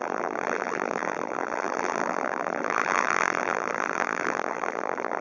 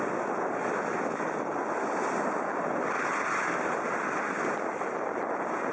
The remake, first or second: first